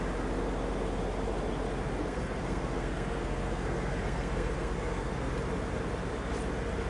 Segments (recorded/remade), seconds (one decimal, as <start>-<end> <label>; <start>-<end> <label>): 0.0-2.0 recorded; 2.0-5.3 remade; 5.3-6.9 recorded